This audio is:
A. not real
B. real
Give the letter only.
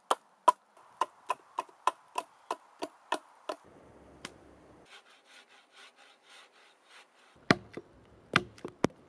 B